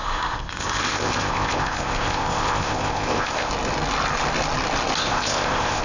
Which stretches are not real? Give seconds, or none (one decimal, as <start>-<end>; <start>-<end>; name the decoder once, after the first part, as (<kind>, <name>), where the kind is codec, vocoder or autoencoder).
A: 0.0-3.5 (codec, ZipCodec); 5.0-5.8